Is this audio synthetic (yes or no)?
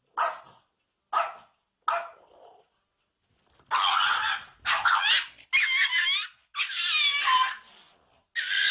no